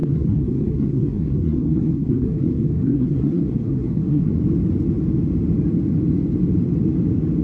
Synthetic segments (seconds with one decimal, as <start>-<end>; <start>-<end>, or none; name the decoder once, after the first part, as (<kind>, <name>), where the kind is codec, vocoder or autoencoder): 0.0-4.4 (codec, SNAC)